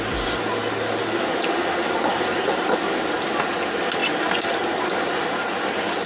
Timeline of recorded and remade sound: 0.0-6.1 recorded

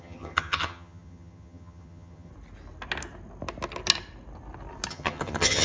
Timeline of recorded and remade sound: 0.0-2.3 remade; 2.3-4.9 recorded; 4.9-5.6 remade

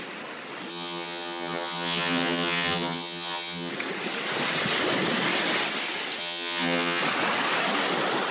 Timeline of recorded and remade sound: 0.0-0.7 recorded; 0.7-3.7 remade; 3.7-6.2 recorded; 6.2-7.0 remade; 7.0-8.3 recorded

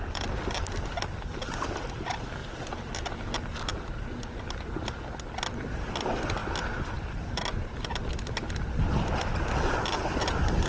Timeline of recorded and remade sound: 0.0-10.7 recorded

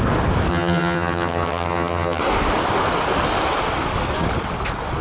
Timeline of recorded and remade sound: 0.0-0.5 recorded; 0.5-2.2 remade; 2.2-5.0 recorded